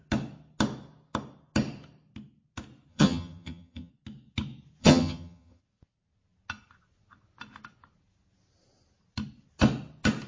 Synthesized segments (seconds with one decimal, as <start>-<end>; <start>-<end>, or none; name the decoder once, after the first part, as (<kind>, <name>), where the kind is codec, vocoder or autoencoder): 2.9-3.9 (vocoder, HiFi-GAN); 4.8-5.6